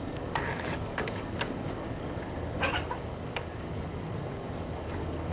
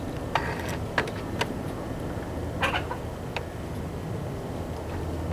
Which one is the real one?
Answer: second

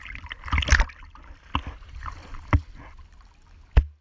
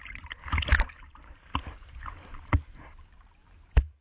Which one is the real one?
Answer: first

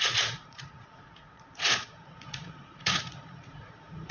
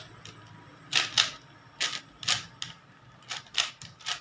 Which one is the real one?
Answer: second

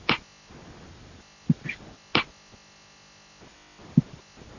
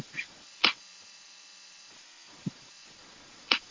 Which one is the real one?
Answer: first